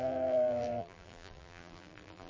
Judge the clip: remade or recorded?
remade